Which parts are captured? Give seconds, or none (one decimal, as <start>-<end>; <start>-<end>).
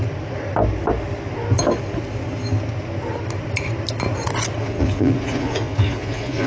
0.0-4.6